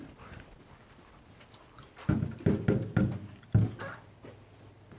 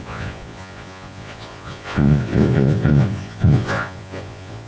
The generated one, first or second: second